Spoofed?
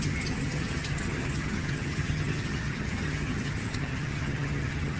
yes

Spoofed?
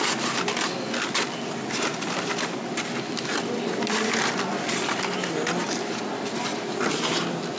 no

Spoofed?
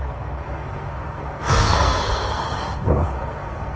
yes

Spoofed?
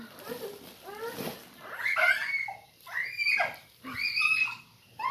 no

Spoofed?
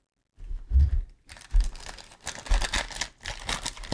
no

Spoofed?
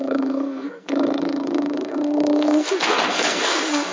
yes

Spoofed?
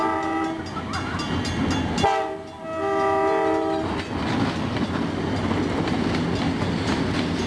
no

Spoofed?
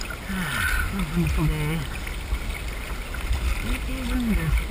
no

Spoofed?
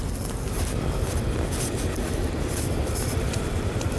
no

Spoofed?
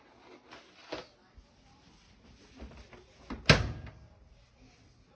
no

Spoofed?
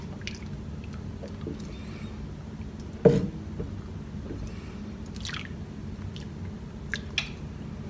no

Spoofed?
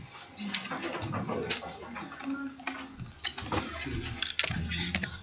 no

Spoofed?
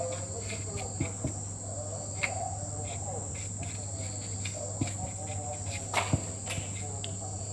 no